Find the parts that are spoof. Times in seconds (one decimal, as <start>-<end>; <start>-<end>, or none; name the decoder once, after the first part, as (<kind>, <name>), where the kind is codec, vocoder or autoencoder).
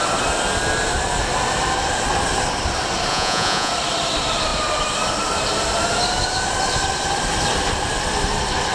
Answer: 3.1-3.7 (vocoder, Vocos)